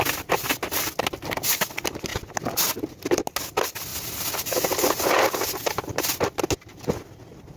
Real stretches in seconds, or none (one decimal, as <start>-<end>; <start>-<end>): 0.0-7.6